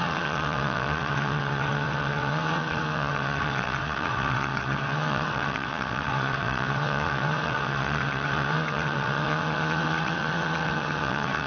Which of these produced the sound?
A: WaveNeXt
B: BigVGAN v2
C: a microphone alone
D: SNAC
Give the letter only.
A